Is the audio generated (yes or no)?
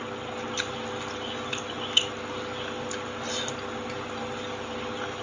no